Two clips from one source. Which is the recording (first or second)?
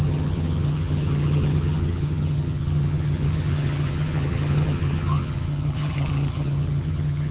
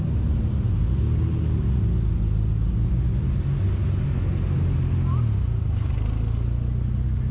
second